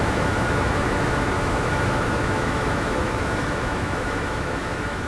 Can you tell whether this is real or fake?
fake